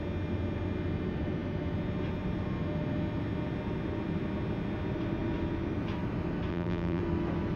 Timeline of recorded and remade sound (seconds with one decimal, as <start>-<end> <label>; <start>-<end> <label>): 0.0-6.5 recorded; 6.5-7.0 remade; 7.0-7.6 recorded